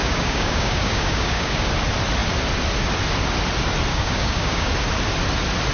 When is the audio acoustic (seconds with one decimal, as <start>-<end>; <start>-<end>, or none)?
1.7-3.9; 4.7-5.7